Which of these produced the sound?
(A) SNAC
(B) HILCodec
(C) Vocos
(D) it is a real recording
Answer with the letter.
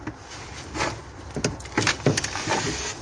D